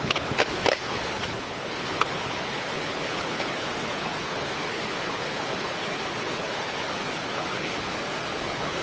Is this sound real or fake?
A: fake